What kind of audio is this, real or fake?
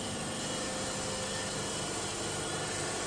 real